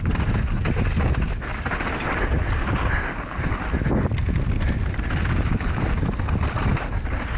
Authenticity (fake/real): real